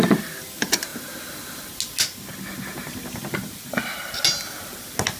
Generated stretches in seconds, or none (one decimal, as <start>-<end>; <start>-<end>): none